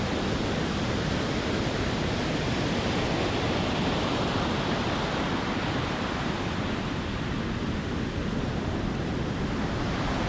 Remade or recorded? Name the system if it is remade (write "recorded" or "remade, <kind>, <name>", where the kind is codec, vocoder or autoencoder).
recorded